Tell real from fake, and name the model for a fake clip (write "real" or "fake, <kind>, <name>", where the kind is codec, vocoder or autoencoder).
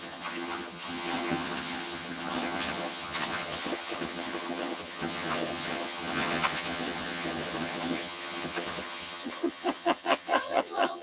fake, vocoder, HiFi-GAN